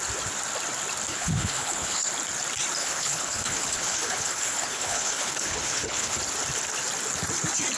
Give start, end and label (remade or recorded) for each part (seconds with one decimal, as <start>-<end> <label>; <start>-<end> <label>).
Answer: 0.0-1.1 recorded; 1.1-2.1 remade; 2.1-2.8 recorded; 2.8-6.2 remade; 6.2-7.8 recorded